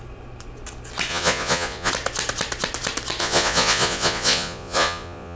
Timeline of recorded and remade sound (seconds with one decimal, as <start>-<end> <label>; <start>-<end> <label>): 0.0-1.1 recorded; 1.1-1.9 remade; 1.9-3.2 recorded; 3.2-5.4 remade